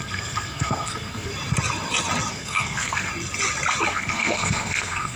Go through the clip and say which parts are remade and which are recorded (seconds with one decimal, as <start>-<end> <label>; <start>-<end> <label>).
0.0-1.3 remade; 1.3-2.3 recorded; 2.3-3.1 remade; 3.1-3.9 recorded; 3.9-5.2 remade